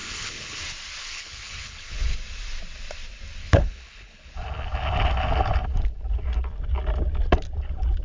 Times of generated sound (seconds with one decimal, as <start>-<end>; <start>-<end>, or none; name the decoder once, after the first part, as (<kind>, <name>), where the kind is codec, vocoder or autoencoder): 0.0-0.6 (codec, HILCodec); 1.0-2.2; 3.4-4.3